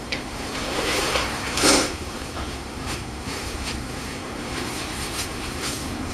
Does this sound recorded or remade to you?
remade